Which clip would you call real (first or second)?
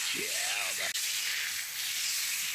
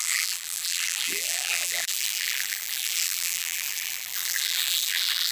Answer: first